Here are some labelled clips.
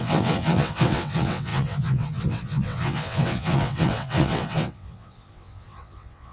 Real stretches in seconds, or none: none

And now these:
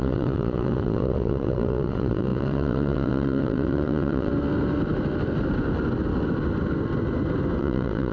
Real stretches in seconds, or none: 4.3-7.6

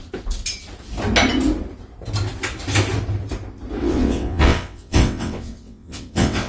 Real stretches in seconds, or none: 0.0-3.8